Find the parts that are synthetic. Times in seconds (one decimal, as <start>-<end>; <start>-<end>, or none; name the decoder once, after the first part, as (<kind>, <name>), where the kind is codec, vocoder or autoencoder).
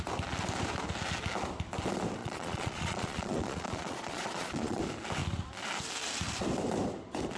2.2-4.8 (vocoder, Vocos)